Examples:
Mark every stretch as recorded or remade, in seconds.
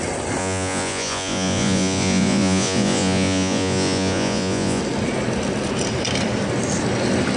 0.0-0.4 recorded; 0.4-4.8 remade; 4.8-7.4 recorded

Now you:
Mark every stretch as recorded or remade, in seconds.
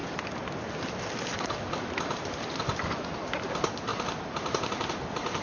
0.0-5.4 recorded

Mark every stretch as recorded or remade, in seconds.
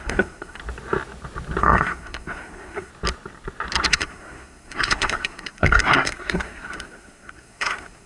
0.0-0.6 remade; 0.6-1.6 recorded; 1.6-2.9 remade; 2.9-3.9 recorded; 3.9-8.1 remade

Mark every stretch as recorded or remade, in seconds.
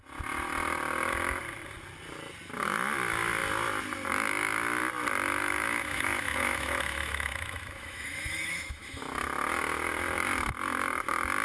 0.0-5.4 recorded; 5.4-9.0 remade; 9.0-11.4 recorded